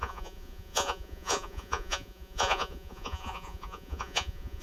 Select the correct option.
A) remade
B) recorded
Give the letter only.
A